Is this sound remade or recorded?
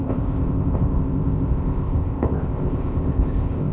remade